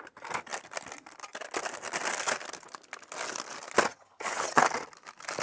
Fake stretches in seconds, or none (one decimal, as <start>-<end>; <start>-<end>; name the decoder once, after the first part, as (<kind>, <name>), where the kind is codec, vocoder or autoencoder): 3.9-4.6 (vocoder, HiFi-GAN)